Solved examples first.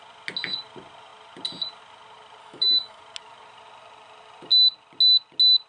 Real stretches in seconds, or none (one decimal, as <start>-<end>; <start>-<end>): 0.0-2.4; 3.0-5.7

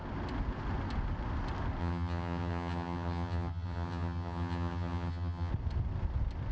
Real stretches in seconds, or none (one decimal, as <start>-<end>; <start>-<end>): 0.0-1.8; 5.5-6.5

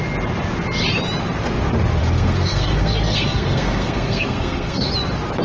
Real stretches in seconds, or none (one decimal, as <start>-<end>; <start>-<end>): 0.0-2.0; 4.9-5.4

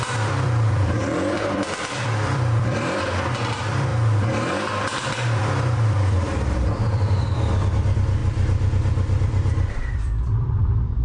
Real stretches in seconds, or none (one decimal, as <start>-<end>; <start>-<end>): none

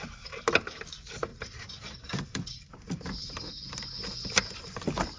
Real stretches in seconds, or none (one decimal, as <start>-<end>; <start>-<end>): 0.0-1.3; 2.7-5.2